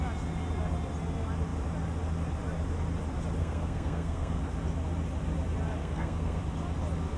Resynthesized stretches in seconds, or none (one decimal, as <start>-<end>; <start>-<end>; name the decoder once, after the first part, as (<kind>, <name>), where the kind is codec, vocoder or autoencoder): 3.4-4.4 (codec, SNAC); 5.8-6.4